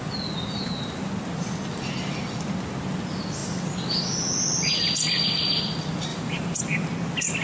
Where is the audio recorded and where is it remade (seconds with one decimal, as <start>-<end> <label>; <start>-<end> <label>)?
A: 0.0-6.1 recorded; 6.1-6.6 remade; 6.6-7.4 recorded